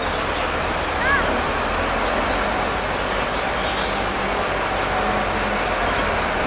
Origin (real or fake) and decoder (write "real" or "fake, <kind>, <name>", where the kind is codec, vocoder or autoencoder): real